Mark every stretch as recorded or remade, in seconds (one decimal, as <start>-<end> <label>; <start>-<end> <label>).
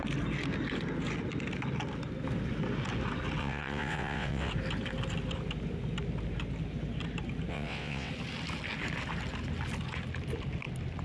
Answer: 0.0-3.4 recorded; 3.4-4.5 remade; 4.5-7.5 recorded; 7.5-8.1 remade; 8.1-11.0 recorded